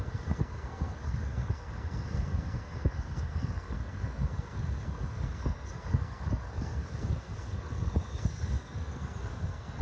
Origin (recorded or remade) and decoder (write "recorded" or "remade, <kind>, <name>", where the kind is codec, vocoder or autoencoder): remade, codec, SNAC